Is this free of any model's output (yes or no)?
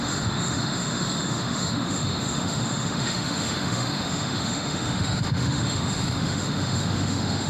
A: no